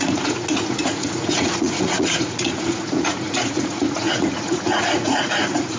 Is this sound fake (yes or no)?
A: yes